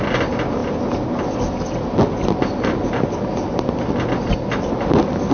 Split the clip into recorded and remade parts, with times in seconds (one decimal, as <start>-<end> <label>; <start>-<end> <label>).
0.0-5.3 recorded